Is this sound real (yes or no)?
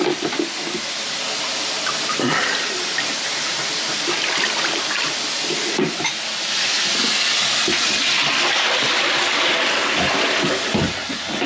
yes